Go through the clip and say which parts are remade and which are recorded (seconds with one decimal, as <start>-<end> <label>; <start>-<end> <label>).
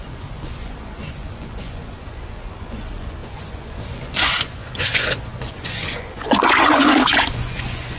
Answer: 0.0-8.0 remade